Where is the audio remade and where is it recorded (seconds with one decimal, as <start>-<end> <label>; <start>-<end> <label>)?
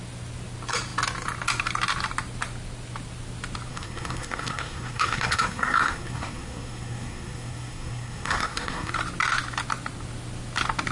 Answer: 0.0-3.7 recorded; 3.7-8.9 remade; 8.9-10.9 recorded